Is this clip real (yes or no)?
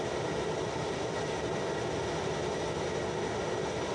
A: yes